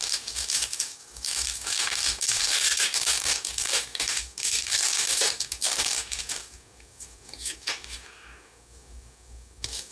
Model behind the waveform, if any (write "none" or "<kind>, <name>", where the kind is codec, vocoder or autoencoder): codec, DAC